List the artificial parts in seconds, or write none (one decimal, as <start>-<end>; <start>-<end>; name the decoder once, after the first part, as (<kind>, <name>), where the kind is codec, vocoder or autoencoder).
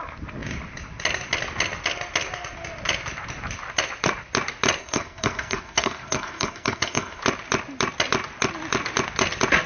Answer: 4.8-7.2 (codec, SNAC)